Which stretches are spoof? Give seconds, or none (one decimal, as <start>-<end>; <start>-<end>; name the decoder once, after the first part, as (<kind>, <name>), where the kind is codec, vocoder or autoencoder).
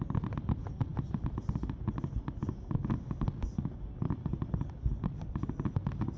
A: none